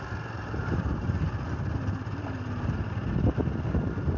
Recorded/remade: recorded